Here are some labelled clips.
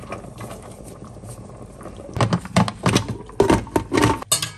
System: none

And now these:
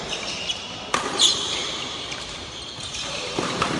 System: vocoder, BigVGAN v2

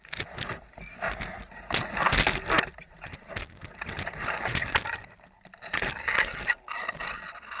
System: none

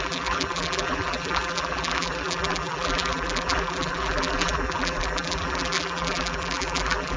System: vocoder, BigVGAN v2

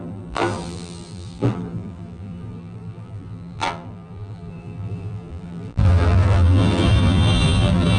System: vocoder, BigVGAN v2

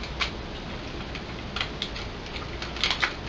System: none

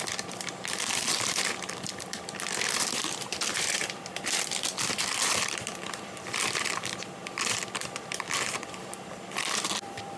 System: vocoder, BigVGAN v2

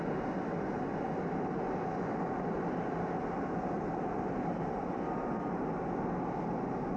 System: none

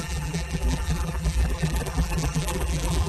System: vocoder, BigVGAN v2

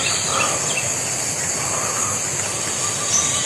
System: none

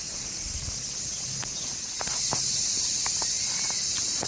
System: none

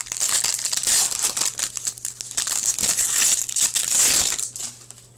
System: none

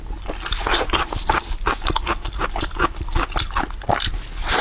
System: none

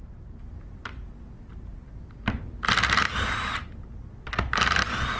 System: vocoder, BigVGAN v2